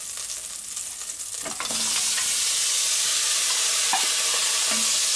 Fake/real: real